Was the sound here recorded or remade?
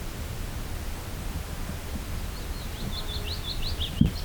recorded